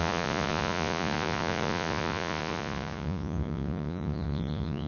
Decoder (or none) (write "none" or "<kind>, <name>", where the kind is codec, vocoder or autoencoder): vocoder, Vocos